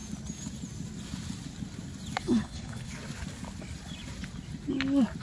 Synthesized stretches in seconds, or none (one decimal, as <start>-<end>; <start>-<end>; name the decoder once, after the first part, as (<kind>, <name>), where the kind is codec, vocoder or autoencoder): 2.2-2.9 (codec, HILCodec)